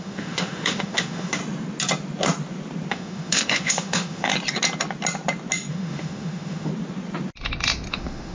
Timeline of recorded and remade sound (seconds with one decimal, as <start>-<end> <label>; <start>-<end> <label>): 0.0-1.4 remade; 1.4-2.9 recorded; 2.9-4.3 remade; 4.3-5.7 recorded; 5.7-6.7 remade; 6.7-7.9 recorded; 7.9-8.3 remade